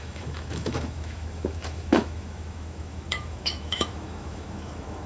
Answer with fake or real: fake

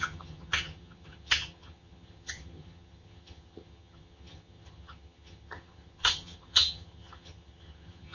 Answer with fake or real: fake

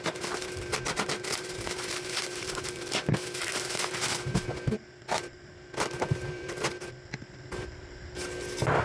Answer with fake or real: fake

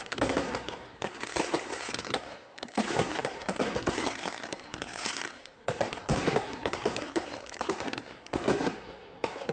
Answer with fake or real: fake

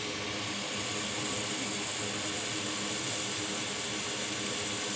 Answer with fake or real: real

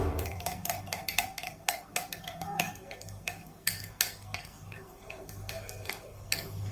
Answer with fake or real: fake